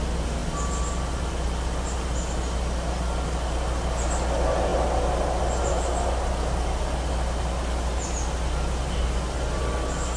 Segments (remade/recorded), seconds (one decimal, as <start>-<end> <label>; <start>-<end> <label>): 0.0-10.2 recorded